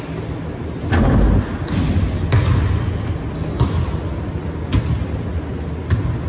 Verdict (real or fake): real